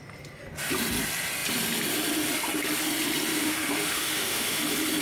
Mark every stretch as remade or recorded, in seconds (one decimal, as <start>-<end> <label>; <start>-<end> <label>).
0.0-3.3 recorded; 3.3-4.6 remade; 4.6-5.0 recorded